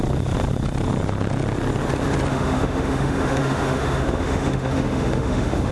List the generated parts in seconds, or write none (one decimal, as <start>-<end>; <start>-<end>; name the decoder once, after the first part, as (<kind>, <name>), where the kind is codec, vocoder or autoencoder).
2.3-5.7 (autoencoder, DAC-VAE)